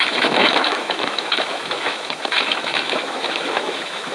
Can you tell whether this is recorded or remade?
remade